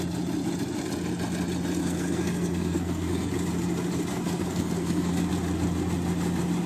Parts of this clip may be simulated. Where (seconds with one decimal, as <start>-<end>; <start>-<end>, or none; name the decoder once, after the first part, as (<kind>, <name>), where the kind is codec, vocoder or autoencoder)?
1.8-3.3 (codec, SNAC); 4.1-5.3